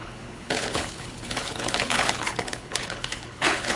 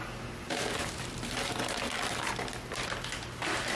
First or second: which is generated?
first